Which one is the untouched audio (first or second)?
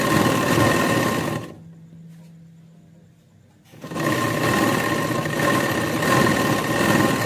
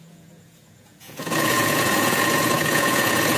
first